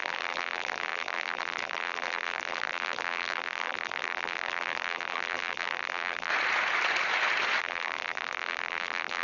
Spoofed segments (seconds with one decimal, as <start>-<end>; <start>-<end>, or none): 0.0-6.3; 7.6-9.2